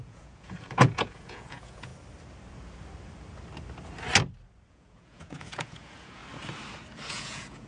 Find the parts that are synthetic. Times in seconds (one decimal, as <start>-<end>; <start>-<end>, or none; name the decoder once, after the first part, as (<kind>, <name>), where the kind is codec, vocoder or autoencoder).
0.0-1.9 (vocoder, Vocos); 4.7-6.2; 7.1-7.7